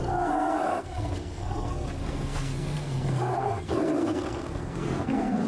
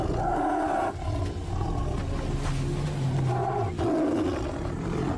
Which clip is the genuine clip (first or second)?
second